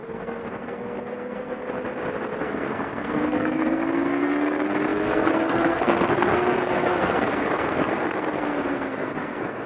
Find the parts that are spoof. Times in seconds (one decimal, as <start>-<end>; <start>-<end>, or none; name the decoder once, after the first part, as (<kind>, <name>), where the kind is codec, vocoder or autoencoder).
0.0-1.6 (codec, SNAC); 2.4-9.7